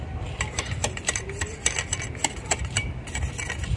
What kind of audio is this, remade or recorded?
remade